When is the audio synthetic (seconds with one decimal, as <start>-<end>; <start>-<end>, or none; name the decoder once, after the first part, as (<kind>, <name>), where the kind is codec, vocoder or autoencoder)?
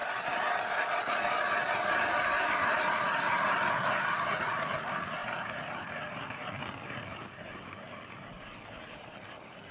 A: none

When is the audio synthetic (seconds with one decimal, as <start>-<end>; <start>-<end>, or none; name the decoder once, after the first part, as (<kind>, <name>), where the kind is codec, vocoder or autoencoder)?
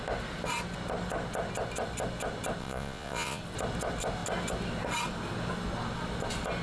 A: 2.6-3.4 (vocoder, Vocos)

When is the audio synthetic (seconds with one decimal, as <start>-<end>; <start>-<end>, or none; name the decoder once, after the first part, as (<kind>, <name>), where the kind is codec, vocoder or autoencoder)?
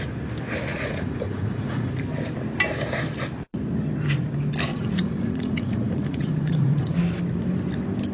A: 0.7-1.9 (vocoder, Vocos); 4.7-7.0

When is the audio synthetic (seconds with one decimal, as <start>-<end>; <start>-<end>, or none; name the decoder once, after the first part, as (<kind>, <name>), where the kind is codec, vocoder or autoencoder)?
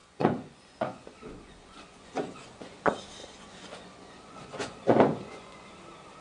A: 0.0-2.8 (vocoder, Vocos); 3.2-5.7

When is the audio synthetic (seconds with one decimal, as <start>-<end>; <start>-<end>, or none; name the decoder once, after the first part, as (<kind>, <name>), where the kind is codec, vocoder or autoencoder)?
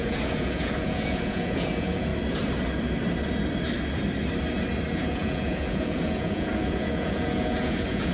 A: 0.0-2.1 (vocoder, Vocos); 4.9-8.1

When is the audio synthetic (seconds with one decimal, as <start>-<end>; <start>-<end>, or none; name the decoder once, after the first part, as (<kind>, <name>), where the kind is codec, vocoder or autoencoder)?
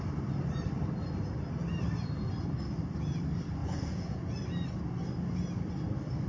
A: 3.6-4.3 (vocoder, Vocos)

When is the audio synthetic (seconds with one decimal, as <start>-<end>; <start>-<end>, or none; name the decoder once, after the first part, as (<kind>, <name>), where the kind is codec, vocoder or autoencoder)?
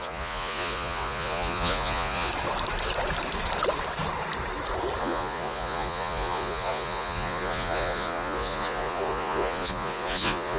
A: 0.0-2.3 (vocoder, Vocos); 5.0-10.6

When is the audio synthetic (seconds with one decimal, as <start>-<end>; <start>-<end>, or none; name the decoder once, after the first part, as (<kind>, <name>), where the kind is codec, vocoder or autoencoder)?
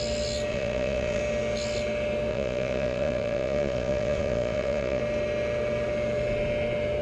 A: 0.5-1.2 (vocoder, Vocos); 2.3-5.0